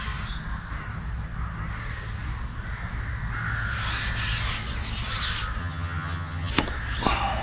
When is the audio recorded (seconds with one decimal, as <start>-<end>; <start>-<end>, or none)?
0.0-5.6; 6.5-7.4